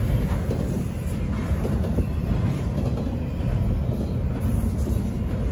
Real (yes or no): yes